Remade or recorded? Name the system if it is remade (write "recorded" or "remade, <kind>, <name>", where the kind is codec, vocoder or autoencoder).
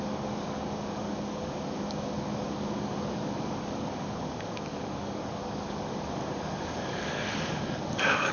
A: remade, codec, DAC